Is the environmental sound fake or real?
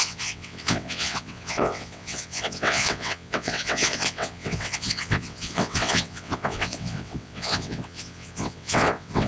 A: fake